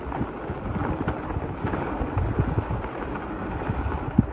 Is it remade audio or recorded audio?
recorded